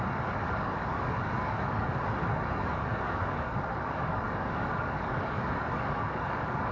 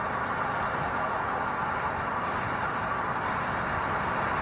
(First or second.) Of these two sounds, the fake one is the first